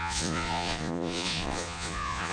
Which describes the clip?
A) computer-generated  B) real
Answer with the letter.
A